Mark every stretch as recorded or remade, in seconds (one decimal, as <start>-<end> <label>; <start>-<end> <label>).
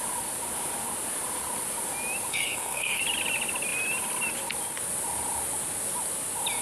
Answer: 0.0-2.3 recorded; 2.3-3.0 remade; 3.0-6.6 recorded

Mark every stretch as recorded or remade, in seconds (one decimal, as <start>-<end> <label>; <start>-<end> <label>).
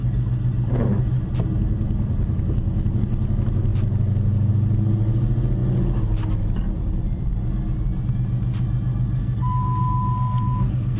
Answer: 0.0-9.2 recorded; 9.2-11.0 remade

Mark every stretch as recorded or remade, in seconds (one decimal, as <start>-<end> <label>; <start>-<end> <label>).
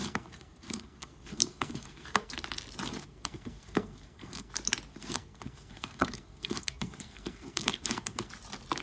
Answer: 0.0-2.3 remade; 2.3-2.9 recorded; 2.9-4.5 remade; 4.5-4.9 recorded; 4.9-8.3 remade; 8.3-8.8 recorded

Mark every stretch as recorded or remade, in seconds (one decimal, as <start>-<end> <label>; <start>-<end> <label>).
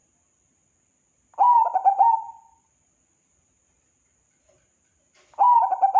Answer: 0.0-6.0 recorded